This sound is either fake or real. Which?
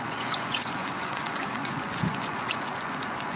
fake